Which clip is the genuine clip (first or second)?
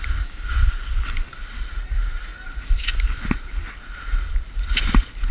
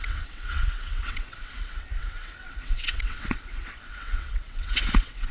first